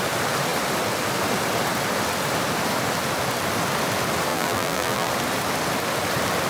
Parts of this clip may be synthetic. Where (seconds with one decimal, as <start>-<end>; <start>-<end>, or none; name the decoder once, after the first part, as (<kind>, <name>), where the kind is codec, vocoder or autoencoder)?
4.3-5.1 (vocoder, BigVGAN v2)